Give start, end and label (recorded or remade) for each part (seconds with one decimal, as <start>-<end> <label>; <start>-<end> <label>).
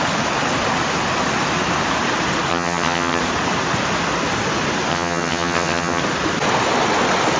0.0-2.5 recorded; 2.5-3.2 remade; 3.2-4.9 recorded; 4.9-6.0 remade; 6.0-7.4 recorded